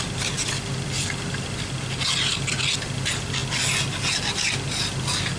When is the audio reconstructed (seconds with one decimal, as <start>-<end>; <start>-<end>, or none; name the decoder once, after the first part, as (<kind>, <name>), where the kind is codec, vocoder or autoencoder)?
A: none